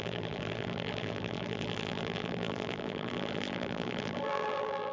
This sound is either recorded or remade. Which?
remade